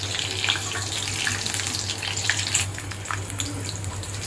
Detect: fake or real real